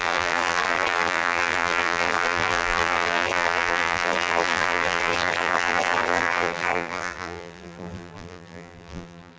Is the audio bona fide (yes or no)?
no